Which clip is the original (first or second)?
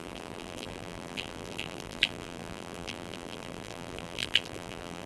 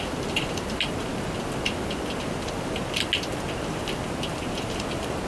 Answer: second